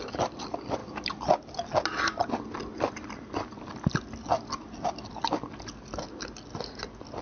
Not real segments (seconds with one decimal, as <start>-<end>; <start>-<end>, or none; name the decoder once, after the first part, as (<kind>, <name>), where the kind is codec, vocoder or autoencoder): none

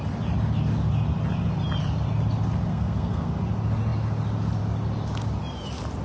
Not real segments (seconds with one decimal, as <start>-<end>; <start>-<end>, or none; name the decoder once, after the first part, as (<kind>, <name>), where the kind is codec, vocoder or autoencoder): 2.7-3.3 (codec, SNAC)